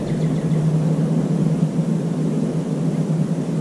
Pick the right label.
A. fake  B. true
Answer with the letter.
B